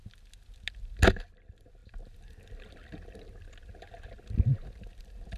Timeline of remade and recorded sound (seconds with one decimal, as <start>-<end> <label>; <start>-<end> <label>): 0.0-5.4 recorded